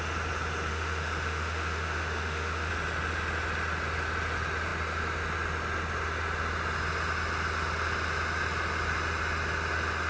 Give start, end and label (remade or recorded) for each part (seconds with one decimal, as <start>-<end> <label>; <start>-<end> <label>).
0.0-0.7 recorded; 0.7-2.7 remade; 2.7-10.1 recorded